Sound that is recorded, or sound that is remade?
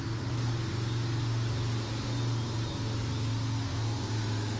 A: recorded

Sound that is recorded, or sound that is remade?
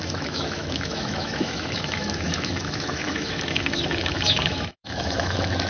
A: remade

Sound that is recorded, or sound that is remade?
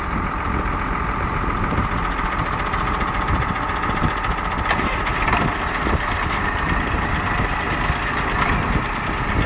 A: recorded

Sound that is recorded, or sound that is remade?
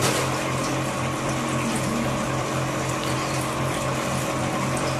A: recorded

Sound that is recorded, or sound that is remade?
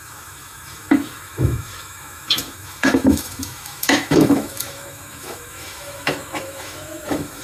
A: remade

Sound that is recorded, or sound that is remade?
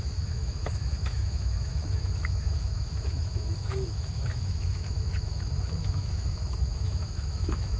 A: remade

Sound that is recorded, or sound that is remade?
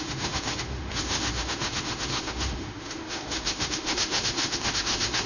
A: remade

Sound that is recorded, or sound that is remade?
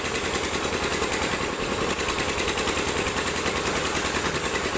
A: recorded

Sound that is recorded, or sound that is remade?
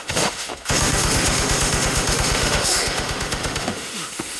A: remade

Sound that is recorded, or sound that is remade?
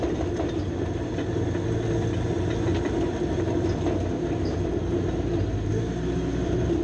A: recorded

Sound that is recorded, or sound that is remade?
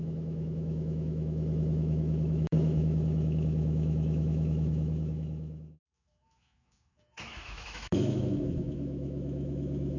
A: remade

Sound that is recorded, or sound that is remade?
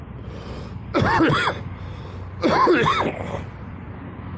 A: recorded